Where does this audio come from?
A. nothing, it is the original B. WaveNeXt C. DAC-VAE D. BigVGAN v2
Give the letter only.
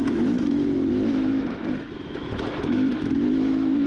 C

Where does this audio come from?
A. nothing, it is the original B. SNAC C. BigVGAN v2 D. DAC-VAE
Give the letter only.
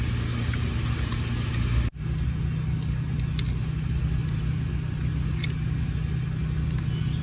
A